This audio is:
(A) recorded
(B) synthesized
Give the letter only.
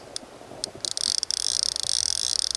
A